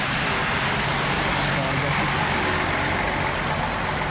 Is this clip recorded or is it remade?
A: recorded